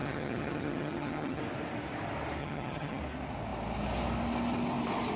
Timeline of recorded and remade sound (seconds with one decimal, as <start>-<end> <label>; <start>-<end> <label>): 0.0-1.4 remade; 1.4-2.4 recorded; 2.4-3.0 remade; 3.0-5.2 recorded